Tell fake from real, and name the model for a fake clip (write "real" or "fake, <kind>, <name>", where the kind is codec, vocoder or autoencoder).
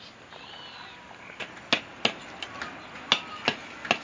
real